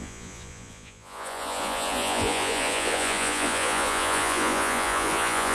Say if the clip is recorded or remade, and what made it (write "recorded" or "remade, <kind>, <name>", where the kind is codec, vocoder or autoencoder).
remade, vocoder, Vocos